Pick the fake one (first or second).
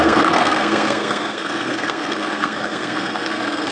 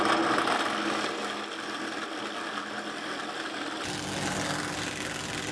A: first